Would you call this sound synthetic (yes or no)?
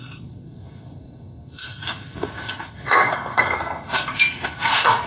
yes